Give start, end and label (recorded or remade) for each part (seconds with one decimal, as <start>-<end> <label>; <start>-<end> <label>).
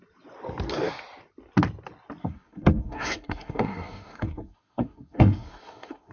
0.0-2.2 recorded; 2.2-6.1 remade